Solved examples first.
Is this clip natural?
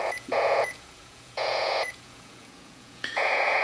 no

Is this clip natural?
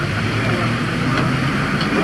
yes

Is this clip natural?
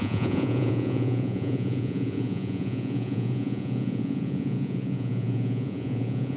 no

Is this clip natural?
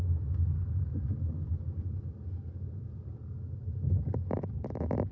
yes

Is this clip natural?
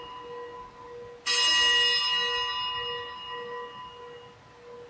yes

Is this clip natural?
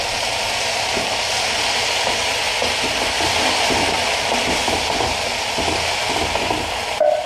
yes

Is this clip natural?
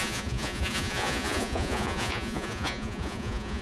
no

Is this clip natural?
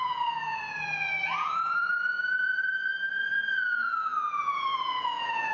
no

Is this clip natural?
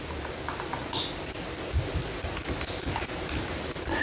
yes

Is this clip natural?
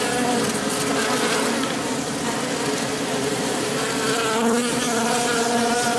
yes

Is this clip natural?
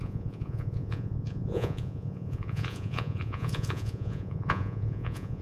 no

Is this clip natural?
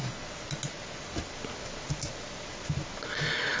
yes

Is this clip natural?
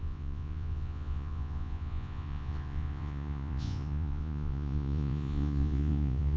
no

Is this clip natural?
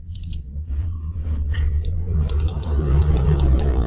no